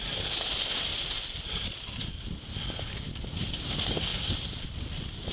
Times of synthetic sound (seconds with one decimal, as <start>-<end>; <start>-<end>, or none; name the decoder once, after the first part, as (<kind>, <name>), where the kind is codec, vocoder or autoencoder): 0.0-5.3 (vocoder, BigVGAN v2)

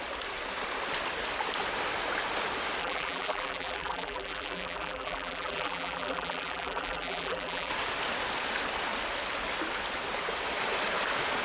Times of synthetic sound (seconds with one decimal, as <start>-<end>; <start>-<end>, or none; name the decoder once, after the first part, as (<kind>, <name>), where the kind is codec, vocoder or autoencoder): 2.8-7.7 (vocoder, BigVGAN v2)